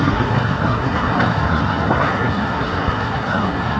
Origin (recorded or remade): remade